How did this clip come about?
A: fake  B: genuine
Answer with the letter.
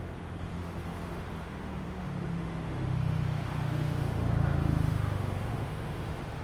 A